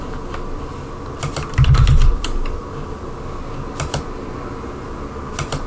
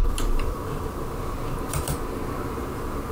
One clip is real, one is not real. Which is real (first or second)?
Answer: first